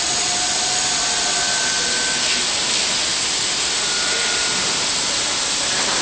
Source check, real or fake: real